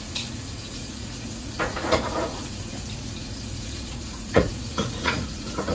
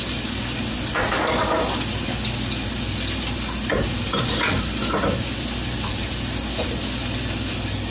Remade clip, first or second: first